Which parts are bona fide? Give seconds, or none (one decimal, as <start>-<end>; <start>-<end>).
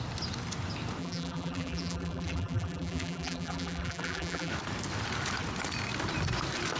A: 0.0-1.0; 4.5-6.8